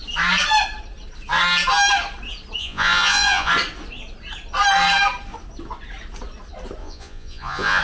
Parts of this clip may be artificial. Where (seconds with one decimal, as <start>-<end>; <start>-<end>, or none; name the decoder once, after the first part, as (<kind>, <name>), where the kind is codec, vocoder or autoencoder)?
2.6-3.5 (vocoder, Vocos); 6.8-7.8